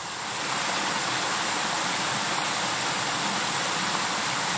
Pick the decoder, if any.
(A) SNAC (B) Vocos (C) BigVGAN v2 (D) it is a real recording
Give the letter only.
D